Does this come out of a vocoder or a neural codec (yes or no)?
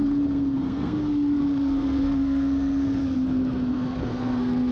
yes